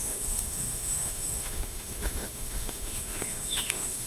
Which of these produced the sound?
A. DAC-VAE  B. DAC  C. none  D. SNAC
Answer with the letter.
A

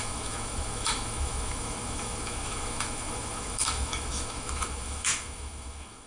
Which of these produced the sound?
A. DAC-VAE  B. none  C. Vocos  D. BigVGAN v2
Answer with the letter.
A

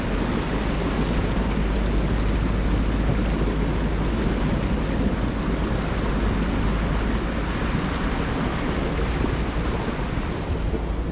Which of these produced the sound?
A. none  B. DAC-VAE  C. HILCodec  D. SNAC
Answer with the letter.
A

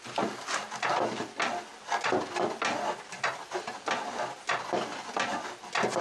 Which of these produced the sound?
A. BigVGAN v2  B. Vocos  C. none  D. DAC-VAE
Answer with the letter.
C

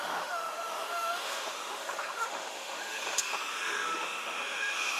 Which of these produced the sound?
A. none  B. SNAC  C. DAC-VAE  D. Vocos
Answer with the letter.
C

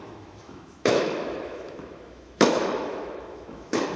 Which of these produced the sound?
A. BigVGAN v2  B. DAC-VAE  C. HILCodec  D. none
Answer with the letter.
B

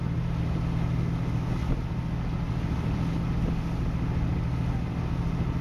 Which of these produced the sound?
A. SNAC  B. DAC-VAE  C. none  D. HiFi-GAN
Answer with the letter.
C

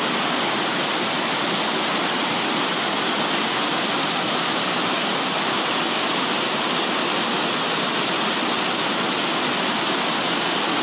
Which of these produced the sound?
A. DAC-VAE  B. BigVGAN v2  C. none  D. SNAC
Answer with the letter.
C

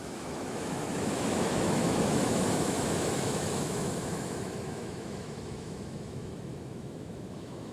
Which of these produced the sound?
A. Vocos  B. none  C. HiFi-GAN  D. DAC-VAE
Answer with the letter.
D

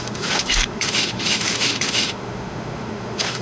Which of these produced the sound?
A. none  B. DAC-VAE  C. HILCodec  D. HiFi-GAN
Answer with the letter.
B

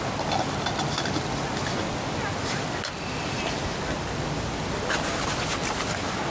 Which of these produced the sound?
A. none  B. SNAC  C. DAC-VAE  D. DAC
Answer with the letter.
A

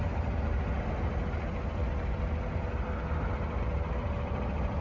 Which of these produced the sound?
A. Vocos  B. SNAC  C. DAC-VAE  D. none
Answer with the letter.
D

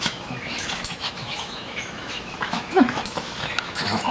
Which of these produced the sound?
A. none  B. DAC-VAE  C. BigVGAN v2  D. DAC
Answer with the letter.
B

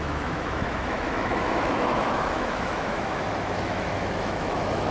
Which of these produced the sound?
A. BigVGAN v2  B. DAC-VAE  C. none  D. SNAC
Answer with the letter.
B